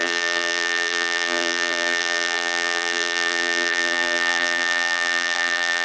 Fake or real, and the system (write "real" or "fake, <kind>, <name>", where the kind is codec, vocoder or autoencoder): fake, vocoder, BigVGAN v2